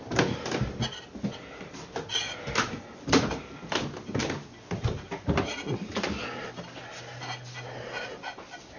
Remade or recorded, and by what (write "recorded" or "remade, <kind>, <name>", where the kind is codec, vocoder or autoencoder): recorded